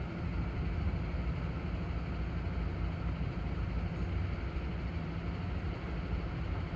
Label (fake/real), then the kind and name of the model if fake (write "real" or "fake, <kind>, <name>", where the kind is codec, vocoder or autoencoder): real